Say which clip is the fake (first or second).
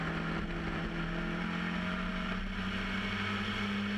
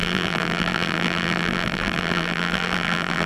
second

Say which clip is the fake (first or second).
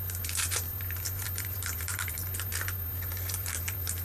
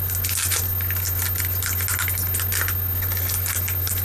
first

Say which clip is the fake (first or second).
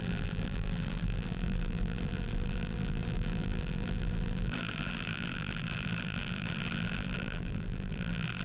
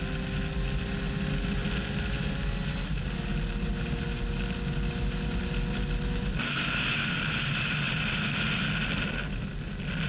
first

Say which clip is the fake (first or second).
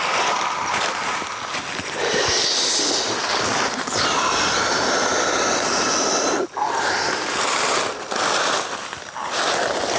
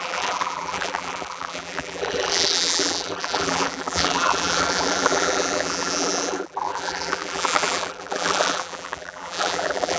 second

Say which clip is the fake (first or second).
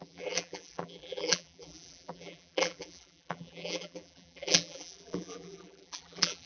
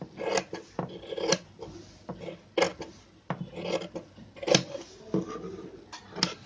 first